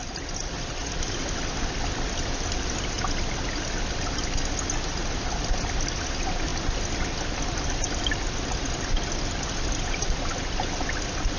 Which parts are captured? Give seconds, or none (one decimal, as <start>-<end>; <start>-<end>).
0.0-11.4